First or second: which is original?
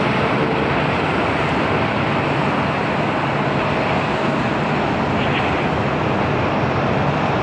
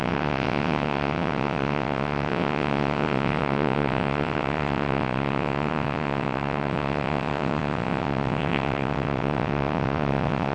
first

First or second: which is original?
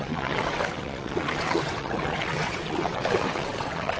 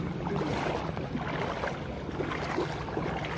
second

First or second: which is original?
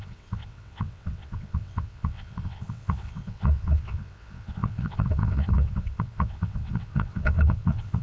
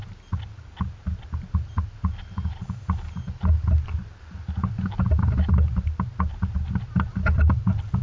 second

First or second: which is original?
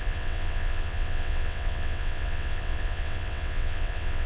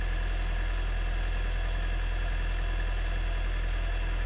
second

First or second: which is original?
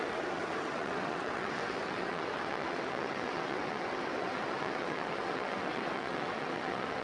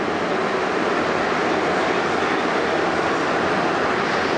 second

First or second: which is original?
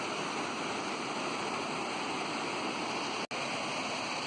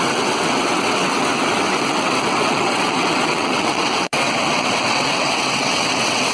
first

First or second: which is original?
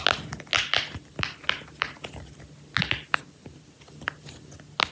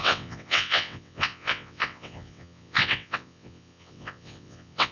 first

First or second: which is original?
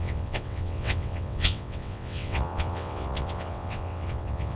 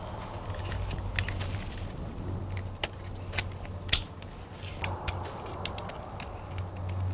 second